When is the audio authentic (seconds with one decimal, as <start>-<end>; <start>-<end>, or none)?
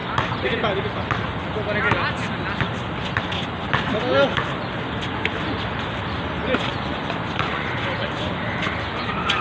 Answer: 0.0-6.7; 8.1-9.4